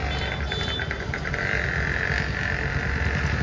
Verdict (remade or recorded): recorded